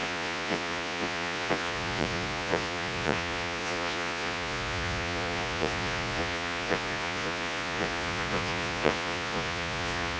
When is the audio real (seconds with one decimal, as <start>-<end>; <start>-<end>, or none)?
none